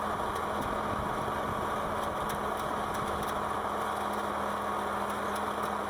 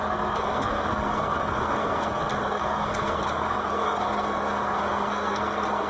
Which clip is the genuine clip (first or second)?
first